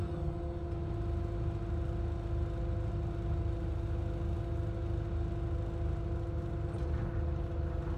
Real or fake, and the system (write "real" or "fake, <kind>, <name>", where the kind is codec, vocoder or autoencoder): real